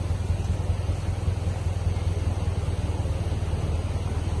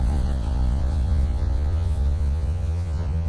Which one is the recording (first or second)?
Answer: first